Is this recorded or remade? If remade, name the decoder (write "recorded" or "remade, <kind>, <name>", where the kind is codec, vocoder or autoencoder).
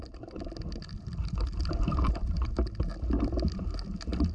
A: recorded